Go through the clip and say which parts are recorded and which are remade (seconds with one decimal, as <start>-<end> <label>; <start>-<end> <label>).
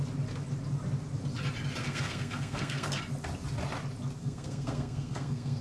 0.0-1.8 recorded; 1.8-3.0 remade; 3.0-4.2 recorded; 4.2-5.6 remade